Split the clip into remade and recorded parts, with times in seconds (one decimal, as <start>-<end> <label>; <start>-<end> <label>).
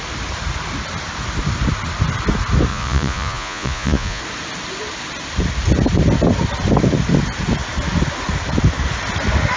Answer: 0.0-2.7 recorded; 2.7-4.2 remade; 4.2-9.6 recorded